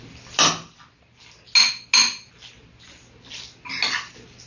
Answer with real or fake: real